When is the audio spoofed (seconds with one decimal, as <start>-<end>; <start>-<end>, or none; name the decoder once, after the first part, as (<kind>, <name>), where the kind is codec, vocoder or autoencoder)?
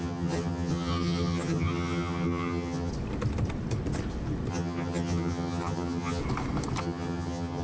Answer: 0.0-2.9 (vocoder, HiFi-GAN); 4.5-6.2; 6.8-7.6